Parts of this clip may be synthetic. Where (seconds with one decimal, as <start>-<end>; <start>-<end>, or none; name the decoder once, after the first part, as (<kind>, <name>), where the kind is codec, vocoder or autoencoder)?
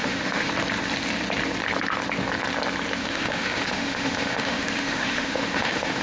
0.0-0.5 (autoencoder, DAC-VAE); 3.0-6.0